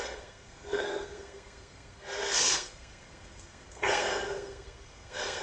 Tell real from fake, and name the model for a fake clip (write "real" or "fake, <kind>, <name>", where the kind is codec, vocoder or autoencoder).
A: fake, codec, SNAC